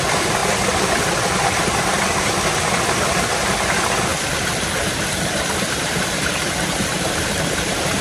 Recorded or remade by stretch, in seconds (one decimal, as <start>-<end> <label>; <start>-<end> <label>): 0.0-4.1 recorded; 4.1-8.0 remade